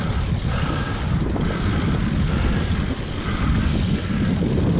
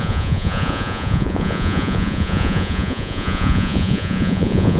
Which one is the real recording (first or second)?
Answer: first